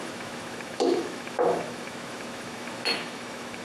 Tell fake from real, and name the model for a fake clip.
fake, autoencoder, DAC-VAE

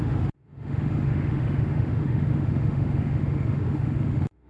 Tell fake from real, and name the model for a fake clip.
fake, autoencoder, DAC-VAE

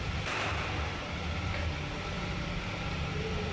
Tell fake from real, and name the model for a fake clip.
real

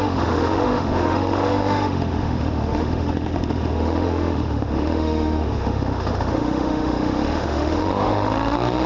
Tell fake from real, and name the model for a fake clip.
fake, autoencoder, DAC-VAE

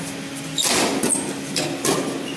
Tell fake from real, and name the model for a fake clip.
real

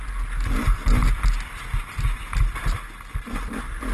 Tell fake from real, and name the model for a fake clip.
real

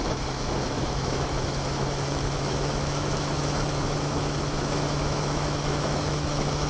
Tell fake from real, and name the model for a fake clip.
fake, autoencoder, DAC-VAE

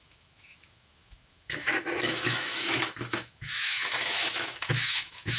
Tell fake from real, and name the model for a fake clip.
fake, autoencoder, DAC-VAE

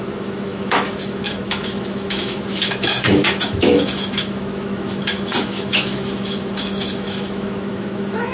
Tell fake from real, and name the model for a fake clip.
fake, autoencoder, DAC-VAE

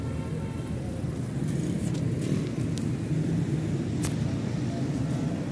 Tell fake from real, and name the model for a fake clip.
real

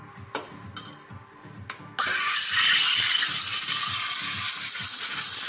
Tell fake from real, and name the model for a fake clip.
real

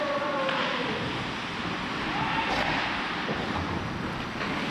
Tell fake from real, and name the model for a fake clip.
real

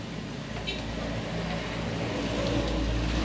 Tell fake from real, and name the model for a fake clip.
real